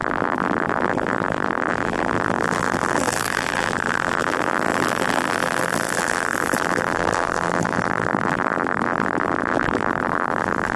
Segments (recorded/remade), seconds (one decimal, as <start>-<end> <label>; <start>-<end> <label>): 0.0-10.8 remade